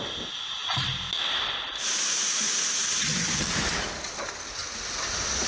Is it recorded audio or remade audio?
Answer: recorded